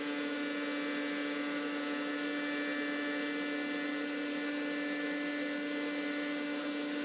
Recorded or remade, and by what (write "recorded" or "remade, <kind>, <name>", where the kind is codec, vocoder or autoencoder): recorded